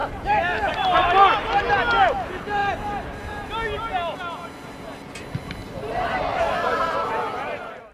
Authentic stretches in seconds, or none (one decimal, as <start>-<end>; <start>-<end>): 1.2-5.6